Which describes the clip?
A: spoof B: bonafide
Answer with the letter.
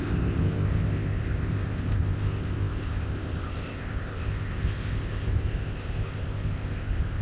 A